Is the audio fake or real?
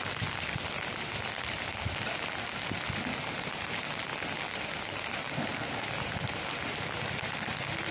real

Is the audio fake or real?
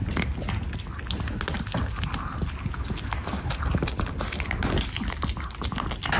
real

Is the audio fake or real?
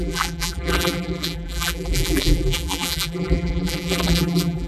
fake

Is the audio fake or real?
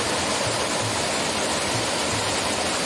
real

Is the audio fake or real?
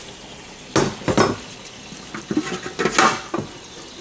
real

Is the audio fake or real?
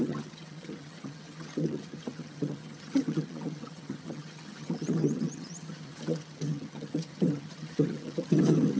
fake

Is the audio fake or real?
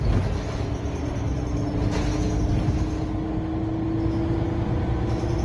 real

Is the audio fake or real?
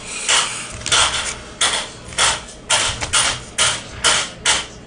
real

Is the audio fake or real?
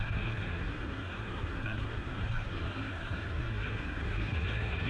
fake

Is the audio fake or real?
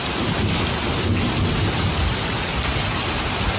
real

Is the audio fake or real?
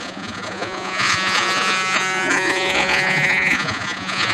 fake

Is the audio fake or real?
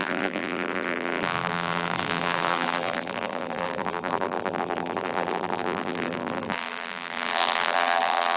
fake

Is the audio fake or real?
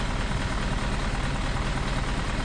real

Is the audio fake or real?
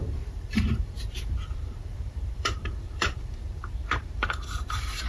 fake